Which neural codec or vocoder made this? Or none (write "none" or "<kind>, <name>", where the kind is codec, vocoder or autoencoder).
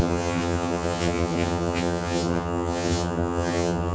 vocoder, HiFi-GAN